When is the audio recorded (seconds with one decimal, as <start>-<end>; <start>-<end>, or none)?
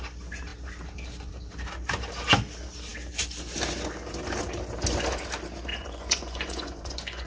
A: 0.0-5.7